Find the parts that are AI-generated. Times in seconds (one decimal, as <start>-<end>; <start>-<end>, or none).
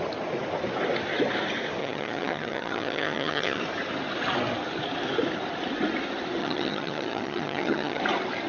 1.8-3.6; 6.4-8.0